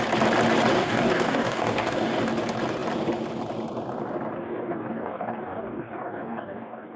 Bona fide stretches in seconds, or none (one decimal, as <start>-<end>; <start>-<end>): 0.0-0.7; 2.2-4.4